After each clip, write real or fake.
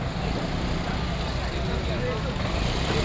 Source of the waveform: real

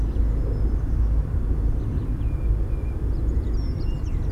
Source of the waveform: real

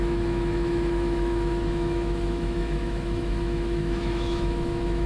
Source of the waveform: fake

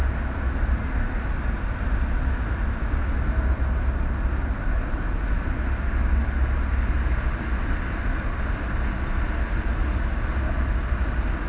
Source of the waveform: real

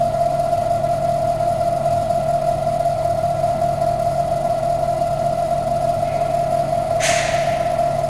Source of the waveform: real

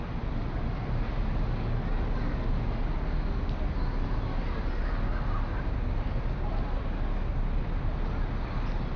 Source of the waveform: real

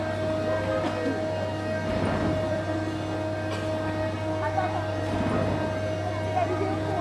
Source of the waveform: real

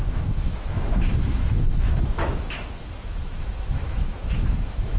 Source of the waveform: fake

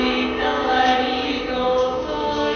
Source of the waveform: fake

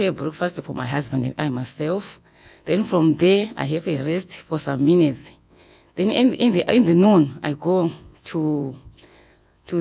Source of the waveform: fake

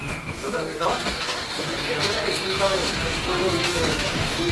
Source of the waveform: fake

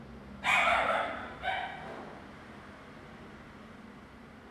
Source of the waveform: real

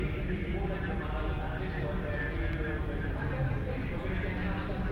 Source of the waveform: real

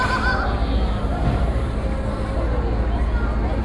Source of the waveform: real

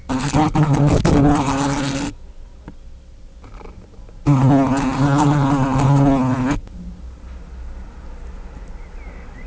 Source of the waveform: real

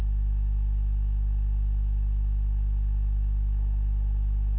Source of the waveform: real